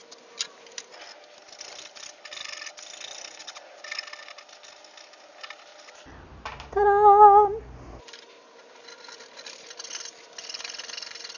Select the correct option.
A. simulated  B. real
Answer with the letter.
B